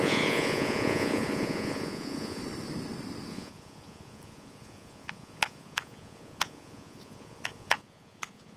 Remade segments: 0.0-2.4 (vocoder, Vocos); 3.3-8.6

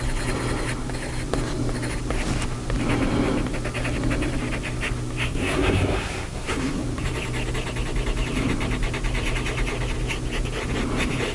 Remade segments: 5.3-6.8 (codec, SNAC)

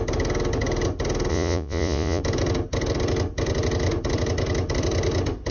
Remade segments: 1.3-2.2 (vocoder, Vocos)

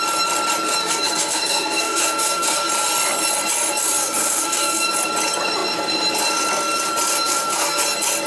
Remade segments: 0.8-2.7 (codec, SNAC); 4.0-4.9; 7.1-7.8

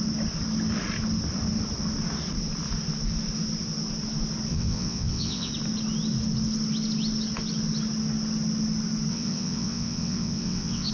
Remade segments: 4.5-5.5 (vocoder, WaveNeXt); 9.1-10.9

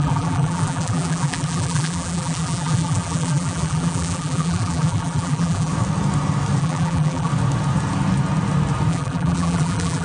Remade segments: 0.0-5.7 (vocoder, BigVGAN v2); 6.6-7.3; 8.9-10.0

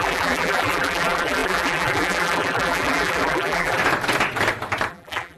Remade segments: 0.0-3.8 (vocoder, BigVGAN v2); 4.9-5.4